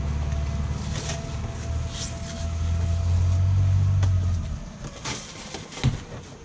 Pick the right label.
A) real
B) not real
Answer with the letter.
A